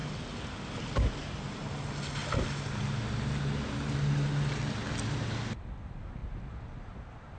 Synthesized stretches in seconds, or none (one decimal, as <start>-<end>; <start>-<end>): none